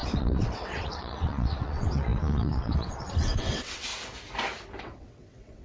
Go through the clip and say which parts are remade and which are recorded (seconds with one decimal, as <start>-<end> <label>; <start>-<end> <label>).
0.0-3.9 remade; 3.9-4.8 recorded; 4.8-5.6 remade